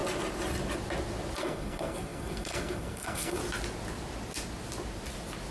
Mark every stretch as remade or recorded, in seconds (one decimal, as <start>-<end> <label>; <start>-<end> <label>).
0.0-1.4 recorded; 1.4-3.4 remade; 3.4-5.5 recorded